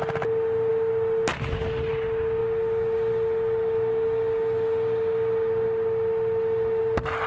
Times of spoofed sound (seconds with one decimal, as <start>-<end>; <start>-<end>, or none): none